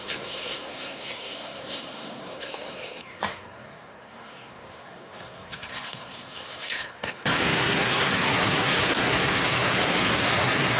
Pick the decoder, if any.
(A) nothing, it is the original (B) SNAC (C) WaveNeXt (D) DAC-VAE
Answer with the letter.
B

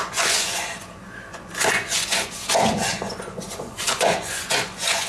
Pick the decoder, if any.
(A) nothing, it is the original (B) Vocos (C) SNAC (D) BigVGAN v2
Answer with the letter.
B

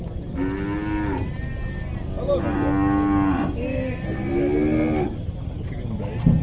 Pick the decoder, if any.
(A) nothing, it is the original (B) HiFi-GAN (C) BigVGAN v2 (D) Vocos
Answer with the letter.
A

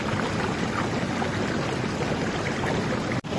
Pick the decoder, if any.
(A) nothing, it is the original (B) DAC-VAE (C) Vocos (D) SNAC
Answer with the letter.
A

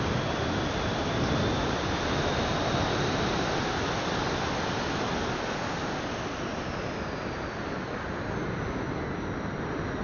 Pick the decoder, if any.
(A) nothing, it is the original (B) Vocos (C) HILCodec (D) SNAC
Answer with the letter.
A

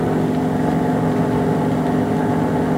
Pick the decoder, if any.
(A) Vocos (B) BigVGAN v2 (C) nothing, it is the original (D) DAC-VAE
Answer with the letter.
C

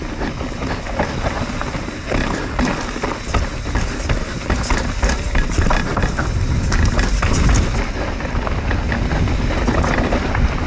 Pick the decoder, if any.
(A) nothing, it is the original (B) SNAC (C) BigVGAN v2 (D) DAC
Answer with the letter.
A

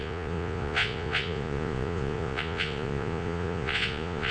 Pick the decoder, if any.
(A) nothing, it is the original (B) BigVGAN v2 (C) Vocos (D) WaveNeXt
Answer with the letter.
C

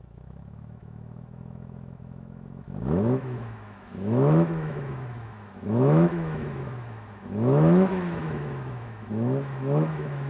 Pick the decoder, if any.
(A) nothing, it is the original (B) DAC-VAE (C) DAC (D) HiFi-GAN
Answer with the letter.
B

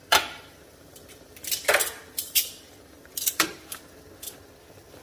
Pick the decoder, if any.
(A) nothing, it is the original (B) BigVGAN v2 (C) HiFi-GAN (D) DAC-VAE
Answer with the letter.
B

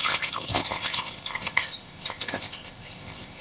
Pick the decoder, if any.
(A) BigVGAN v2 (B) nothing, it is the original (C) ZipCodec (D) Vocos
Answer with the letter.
C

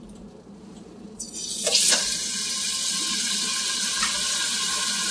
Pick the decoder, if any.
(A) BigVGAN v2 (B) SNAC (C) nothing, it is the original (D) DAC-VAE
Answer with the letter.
C